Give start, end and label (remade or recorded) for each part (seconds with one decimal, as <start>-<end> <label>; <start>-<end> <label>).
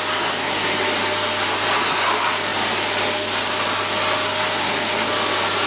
0.0-5.7 recorded